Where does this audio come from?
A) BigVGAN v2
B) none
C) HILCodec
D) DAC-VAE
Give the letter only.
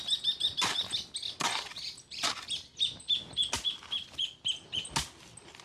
B